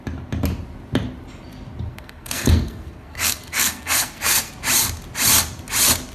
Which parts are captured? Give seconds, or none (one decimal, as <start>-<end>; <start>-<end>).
0.0-1.9; 4.5-6.1